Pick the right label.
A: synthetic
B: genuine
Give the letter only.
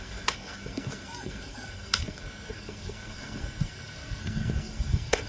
A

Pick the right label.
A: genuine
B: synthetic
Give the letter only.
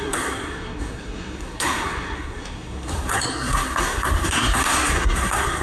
B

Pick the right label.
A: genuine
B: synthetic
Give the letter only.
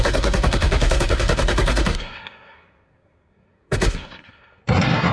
B